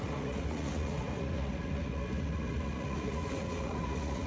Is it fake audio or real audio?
fake